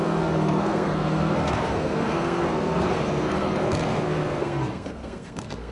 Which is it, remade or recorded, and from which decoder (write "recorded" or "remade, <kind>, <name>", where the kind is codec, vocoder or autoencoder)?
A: remade, codec, SNAC